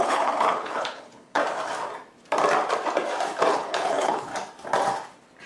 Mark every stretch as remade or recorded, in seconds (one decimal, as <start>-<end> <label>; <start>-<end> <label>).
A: 0.0-1.4 remade; 1.4-3.5 recorded; 3.5-4.3 remade; 4.3-5.5 recorded